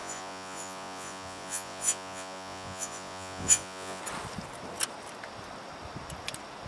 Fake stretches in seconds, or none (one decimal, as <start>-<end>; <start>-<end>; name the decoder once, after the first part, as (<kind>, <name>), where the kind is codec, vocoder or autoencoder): 0.0-4.0 (vocoder, Vocos)

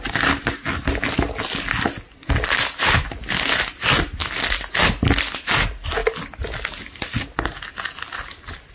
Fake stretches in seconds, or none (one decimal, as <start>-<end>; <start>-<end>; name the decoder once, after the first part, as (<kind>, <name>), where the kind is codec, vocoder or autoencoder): none

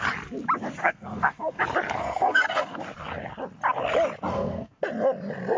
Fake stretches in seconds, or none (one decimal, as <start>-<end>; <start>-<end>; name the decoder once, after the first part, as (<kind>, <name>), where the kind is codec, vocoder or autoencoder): 0.8-1.6 (codec, SNAC); 2.0-2.8; 4.3-4.8

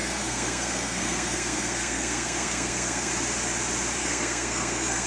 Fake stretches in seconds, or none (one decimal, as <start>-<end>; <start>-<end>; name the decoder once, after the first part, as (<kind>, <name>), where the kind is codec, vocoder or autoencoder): 0.0-3.1 (codec, SNAC); 4.0-5.1

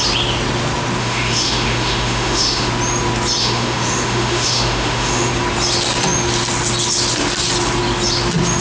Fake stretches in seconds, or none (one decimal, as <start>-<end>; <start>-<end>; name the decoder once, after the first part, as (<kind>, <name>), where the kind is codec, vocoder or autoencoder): 1.0-2.7 (autoencoder, DAC-VAE); 3.4-5.3

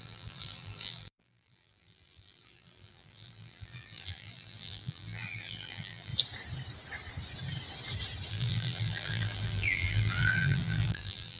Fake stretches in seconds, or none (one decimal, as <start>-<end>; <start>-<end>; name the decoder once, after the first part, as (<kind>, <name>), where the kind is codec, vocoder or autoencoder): 0.0-6.1 (vocoder, BigVGAN v2); 8.3-11.4